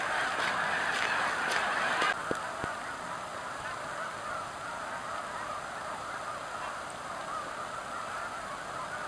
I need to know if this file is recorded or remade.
recorded